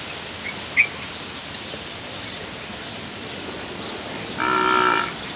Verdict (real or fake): real